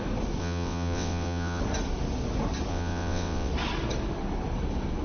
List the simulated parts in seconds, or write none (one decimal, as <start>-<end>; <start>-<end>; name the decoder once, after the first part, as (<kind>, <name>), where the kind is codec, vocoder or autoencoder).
0.4-1.6 (vocoder, WaveNeXt); 2.7-3.5